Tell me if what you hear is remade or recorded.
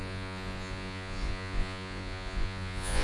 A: remade